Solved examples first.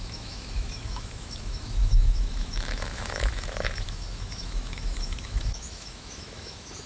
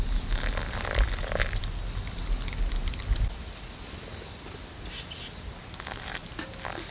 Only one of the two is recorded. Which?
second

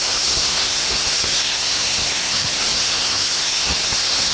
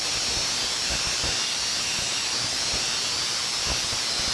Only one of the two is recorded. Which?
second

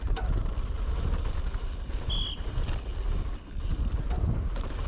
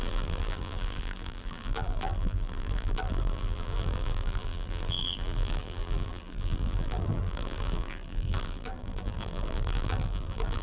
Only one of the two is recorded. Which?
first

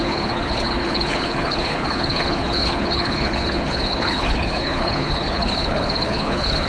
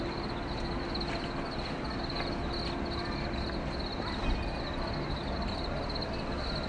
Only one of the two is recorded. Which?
second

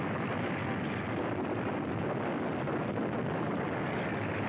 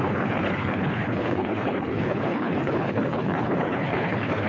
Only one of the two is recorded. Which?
first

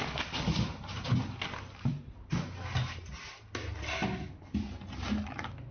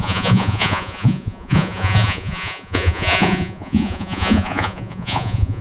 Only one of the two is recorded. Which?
first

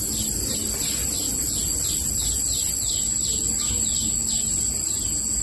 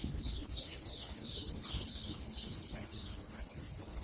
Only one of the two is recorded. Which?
first